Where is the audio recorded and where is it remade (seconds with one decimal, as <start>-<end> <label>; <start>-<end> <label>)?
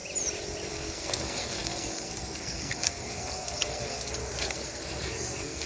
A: 0.0-0.7 recorded; 0.7-5.7 remade